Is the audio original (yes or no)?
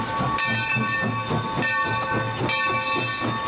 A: yes